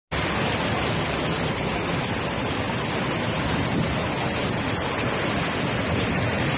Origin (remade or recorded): recorded